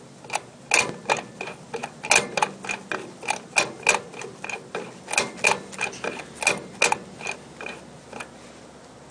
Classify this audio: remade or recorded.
recorded